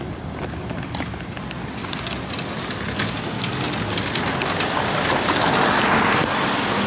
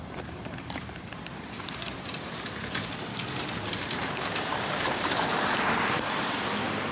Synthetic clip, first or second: second